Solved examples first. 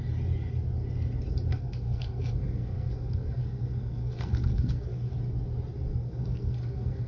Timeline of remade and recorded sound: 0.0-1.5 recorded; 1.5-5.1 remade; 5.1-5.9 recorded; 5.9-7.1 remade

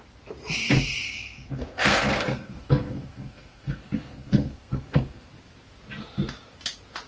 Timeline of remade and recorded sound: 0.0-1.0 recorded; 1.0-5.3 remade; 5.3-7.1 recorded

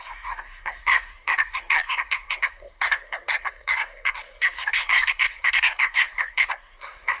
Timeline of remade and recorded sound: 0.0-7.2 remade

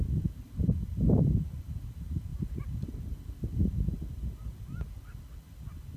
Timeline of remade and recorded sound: 0.0-6.0 recorded

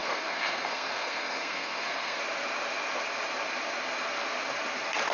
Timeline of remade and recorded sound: 0.0-2.2 remade; 2.2-5.1 recorded